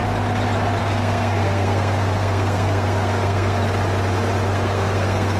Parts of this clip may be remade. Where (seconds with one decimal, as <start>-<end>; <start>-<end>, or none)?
0.8-3.6; 4.5-5.4